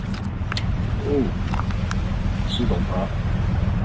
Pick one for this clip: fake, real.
real